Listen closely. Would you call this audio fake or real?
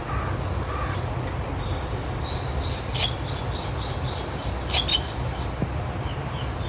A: real